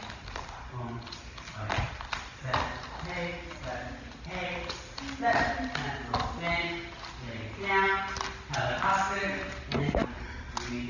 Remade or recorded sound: recorded